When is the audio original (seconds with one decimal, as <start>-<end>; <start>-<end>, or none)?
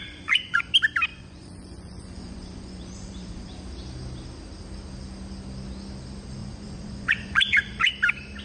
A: 0.6-1.1; 3.6-6.4; 7.9-8.4